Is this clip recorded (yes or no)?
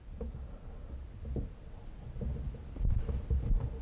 yes